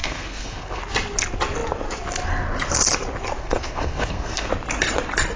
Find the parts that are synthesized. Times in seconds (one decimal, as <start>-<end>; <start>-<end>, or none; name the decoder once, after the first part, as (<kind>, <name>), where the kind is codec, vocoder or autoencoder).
0.0-0.8 (codec, SNAC); 3.4-4.5

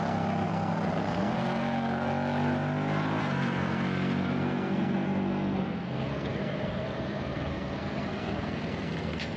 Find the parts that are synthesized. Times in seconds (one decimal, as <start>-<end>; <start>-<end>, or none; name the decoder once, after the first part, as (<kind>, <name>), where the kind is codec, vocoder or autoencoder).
0.0-2.1 (codec, SNAC); 3.2-9.4

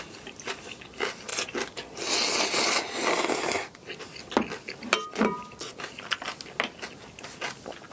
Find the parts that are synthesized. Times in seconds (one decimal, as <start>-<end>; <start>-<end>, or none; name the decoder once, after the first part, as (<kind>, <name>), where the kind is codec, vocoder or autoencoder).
none

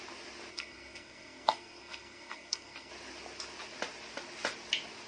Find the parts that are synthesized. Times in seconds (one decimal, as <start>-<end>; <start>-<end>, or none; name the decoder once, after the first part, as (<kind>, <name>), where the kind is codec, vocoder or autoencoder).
0.5-2.9 (codec, SNAC)